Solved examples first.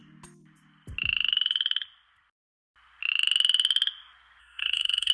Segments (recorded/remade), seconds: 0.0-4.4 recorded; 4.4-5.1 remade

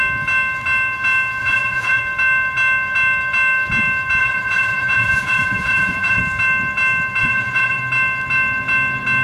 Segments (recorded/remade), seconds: 0.0-1.4 recorded; 1.4-2.0 remade; 2.0-4.2 recorded; 4.2-6.2 remade; 6.2-7.2 recorded; 7.2-7.8 remade; 7.8-9.2 recorded

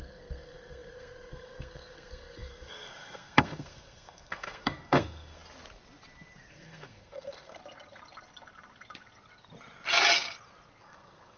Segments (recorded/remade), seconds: 0.0-5.4 remade; 5.4-6.5 recorded; 6.5-7.6 remade; 7.6-10.8 recorded; 10.8-11.4 remade

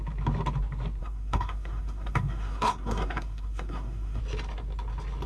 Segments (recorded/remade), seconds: 0.0-1.0 recorded; 1.0-4.2 remade; 4.2-5.3 recorded